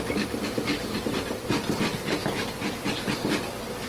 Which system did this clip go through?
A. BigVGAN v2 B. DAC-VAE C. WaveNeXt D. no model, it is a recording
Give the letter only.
D